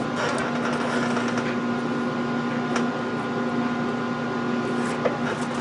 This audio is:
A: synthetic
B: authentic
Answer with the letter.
B